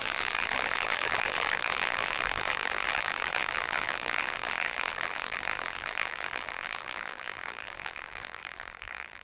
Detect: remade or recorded remade